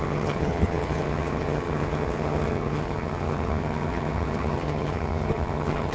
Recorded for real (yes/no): no